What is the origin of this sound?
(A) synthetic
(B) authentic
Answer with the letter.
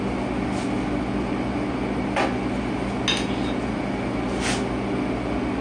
B